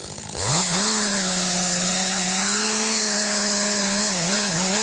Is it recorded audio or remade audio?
remade